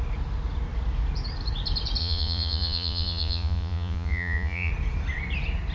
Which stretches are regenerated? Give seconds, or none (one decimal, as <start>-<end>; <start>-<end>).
2.0-4.7